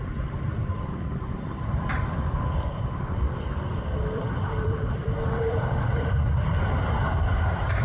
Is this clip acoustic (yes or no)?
no